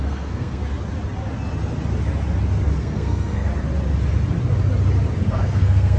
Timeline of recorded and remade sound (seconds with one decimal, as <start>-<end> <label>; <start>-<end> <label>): 0.0-0.6 remade; 0.6-2.8 recorded; 2.8-3.5 remade; 3.5-5.2 recorded; 5.2-6.0 remade